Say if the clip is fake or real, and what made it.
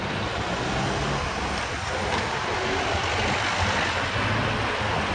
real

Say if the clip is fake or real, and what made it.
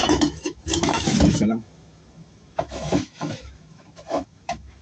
fake, autoencoder, DAC-VAE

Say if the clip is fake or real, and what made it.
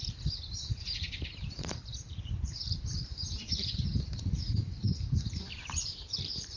fake, vocoder, BigVGAN v2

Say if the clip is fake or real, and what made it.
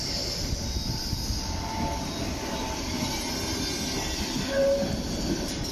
real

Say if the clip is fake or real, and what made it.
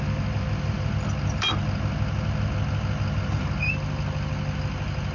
real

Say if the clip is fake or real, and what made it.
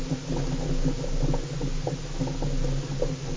real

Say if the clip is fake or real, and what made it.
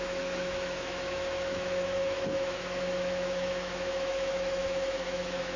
fake, autoencoder, DAC-VAE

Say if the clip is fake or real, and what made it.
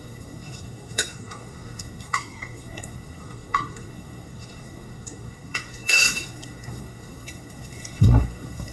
fake, codec, SNAC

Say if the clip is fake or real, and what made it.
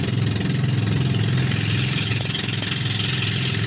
real